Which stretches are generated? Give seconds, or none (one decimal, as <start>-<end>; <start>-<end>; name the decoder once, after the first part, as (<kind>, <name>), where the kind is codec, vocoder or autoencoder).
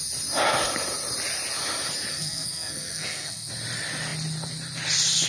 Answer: 2.1-3.5 (codec, SNAC)